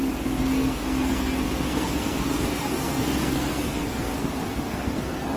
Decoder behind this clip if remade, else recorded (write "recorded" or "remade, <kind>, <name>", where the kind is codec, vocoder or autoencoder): remade, codec, SNAC